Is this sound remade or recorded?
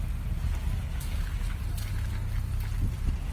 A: recorded